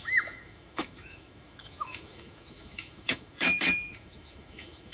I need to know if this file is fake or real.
fake